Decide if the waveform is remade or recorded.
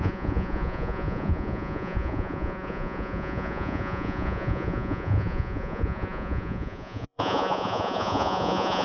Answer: remade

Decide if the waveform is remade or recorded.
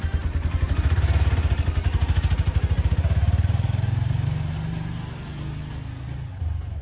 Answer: recorded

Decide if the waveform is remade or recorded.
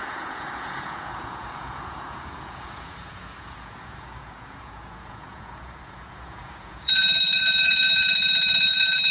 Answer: remade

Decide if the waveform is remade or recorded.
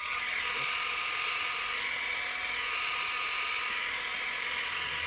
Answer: recorded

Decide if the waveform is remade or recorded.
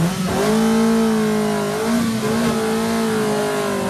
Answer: recorded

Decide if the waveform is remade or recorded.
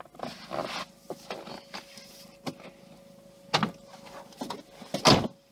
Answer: recorded